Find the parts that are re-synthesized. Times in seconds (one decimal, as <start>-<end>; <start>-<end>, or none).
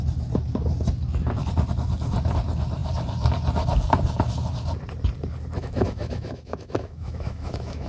5.6-7.9